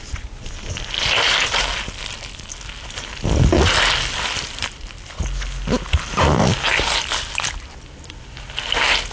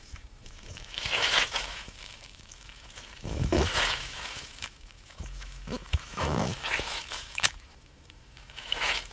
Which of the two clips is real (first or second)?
first